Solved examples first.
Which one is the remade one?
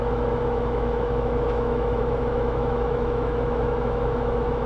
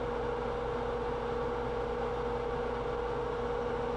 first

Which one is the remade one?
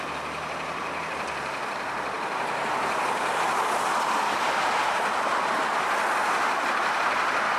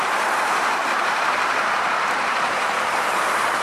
second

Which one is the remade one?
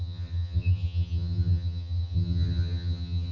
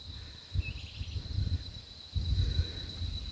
first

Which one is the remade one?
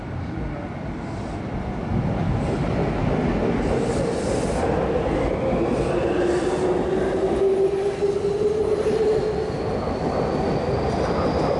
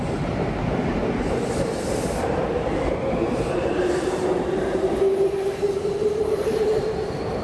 second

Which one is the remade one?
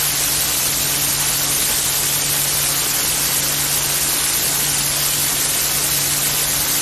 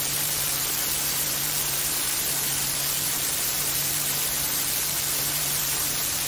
second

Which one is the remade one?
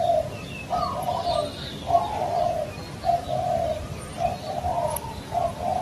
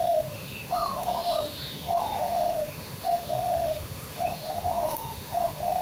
second